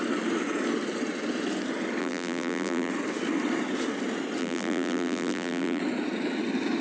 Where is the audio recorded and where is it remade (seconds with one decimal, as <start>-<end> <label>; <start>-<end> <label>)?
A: 0.0-2.0 recorded; 2.0-2.9 remade; 2.9-4.4 recorded; 4.4-5.8 remade; 5.8-6.8 recorded